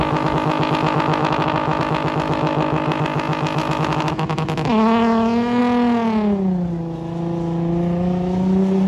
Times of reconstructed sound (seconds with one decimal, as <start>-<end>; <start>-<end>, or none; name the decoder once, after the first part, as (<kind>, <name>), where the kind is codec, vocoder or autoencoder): 1.2-3.0 (autoencoder, DAC-VAE); 3.6-5.6